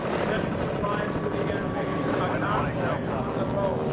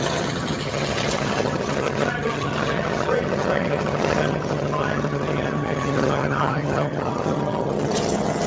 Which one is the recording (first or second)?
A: first